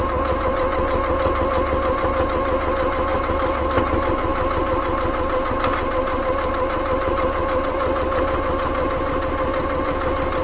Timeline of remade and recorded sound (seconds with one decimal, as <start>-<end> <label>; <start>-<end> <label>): 0.0-10.4 recorded